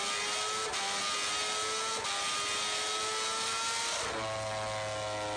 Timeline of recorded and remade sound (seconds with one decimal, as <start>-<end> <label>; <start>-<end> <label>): 0.0-5.4 recorded